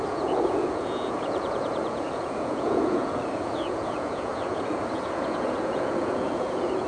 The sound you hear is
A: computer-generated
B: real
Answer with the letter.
A